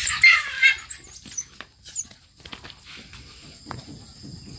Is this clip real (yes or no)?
yes